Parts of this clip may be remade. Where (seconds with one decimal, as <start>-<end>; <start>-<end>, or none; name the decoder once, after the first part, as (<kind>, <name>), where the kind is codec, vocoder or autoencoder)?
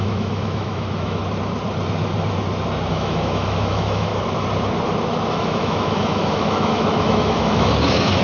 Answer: 0.0-1.2 (autoencoder, DAC-VAE); 2.9-4.1; 5.3-8.2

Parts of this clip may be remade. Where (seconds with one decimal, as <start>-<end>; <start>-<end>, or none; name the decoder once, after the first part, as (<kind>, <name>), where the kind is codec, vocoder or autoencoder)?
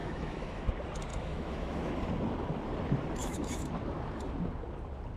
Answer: 0.0-0.7 (autoencoder, DAC-VAE); 1.1-1.9; 3.2-3.7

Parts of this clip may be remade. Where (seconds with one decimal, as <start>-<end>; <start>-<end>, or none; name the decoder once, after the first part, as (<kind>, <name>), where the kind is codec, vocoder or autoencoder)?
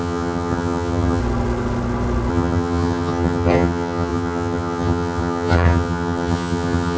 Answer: 0.0-1.2 (vocoder, HiFi-GAN); 2.3-7.0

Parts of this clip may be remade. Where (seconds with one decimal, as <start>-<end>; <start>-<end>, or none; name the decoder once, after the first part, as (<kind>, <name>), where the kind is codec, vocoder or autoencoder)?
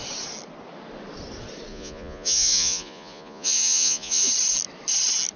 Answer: 1.7-4.3 (vocoder, Vocos)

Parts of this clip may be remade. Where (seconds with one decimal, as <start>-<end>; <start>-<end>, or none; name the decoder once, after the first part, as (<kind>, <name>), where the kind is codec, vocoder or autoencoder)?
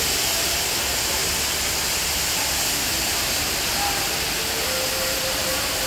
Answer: none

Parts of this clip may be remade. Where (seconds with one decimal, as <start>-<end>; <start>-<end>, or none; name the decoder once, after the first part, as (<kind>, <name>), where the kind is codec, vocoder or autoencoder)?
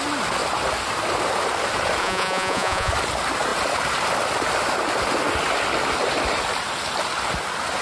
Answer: 2.0-2.9 (vocoder, Vocos)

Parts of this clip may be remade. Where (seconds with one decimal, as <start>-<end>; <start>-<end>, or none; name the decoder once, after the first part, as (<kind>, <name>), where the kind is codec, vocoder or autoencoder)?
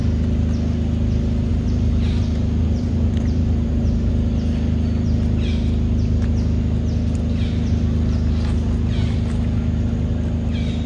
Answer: 1.5-4.1 (vocoder, BigVGAN v2)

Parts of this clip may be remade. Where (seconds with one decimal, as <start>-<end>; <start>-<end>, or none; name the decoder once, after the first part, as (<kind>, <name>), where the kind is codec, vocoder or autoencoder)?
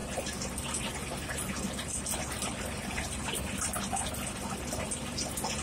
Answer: none